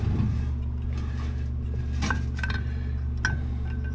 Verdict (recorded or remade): recorded